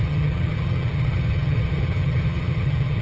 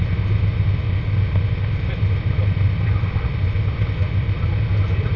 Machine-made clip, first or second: first